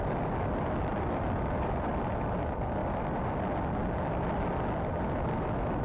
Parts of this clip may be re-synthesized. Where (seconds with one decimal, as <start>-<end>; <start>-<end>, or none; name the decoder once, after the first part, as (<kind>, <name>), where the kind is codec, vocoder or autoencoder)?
0.9-1.9 (vocoder, BigVGAN v2)